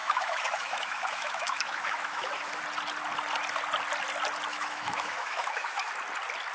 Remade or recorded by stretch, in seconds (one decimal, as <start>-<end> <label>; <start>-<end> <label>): 0.0-2.6 remade; 2.6-4.5 recorded; 4.5-5.9 remade; 5.9-6.5 recorded